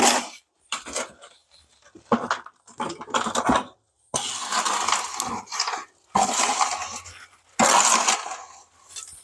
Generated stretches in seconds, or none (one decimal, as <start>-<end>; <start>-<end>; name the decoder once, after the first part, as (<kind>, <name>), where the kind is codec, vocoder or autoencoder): none